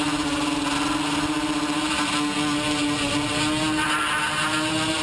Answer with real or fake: real